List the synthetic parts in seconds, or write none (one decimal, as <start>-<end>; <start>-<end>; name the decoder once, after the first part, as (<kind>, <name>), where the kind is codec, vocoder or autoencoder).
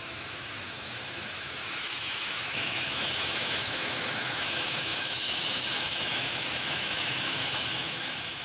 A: 0.0-8.4 (autoencoder, DAC-VAE)